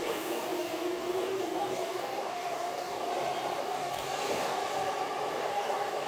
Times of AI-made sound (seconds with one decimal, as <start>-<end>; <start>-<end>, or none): 0.0-3.1; 3.6-4.6; 5.3-6.1